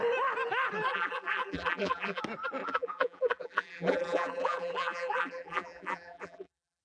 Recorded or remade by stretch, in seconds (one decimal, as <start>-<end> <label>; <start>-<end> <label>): 0.0-0.9 recorded; 0.9-2.2 remade; 2.2-2.6 recorded; 2.6-6.8 remade